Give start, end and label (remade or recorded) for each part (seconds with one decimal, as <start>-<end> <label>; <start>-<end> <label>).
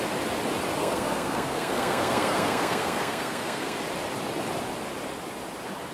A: 0.0-0.8 recorded; 0.8-3.8 remade; 3.8-5.9 recorded